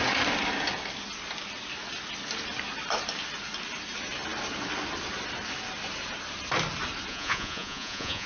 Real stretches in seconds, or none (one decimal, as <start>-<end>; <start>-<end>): 0.0-7.1